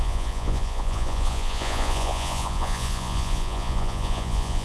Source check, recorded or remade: remade